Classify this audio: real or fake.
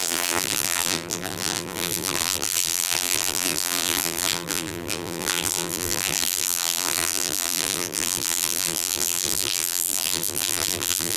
fake